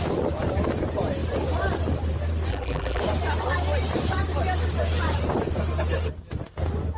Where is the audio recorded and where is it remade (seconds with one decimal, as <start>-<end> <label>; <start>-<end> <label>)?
0.0-2.5 recorded; 2.5-3.0 remade; 3.0-7.0 recorded

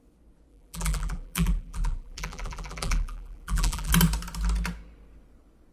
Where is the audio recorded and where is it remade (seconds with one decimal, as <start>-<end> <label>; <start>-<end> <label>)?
0.0-0.5 recorded; 0.5-3.9 remade; 3.9-5.7 recorded

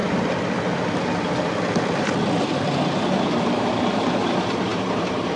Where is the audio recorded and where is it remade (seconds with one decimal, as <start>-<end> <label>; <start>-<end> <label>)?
0.0-2.4 recorded; 2.4-5.4 remade

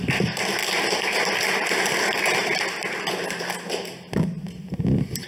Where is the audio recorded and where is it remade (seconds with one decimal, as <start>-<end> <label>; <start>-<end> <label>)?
0.0-5.3 recorded

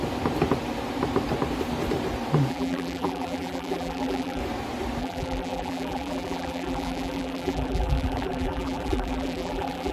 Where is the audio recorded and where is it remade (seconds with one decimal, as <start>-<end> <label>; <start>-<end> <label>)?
0.0-2.5 recorded; 2.5-4.4 remade; 4.4-5.0 recorded; 5.0-9.9 remade

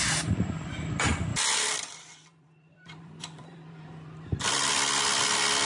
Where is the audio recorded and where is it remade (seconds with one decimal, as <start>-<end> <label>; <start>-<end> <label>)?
0.0-1.3 recorded; 1.3-4.7 remade; 4.7-5.6 recorded

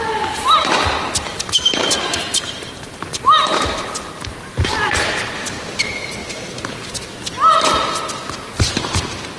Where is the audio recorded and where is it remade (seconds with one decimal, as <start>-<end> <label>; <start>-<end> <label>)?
0.0-1.3 recorded; 1.3-4.1 remade; 4.1-4.5 recorded; 4.5-5.3 remade; 5.3-6.2 recorded; 6.2-6.9 remade; 6.9-9.4 recorded